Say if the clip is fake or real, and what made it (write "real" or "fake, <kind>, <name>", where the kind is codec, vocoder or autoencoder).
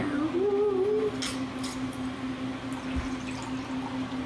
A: real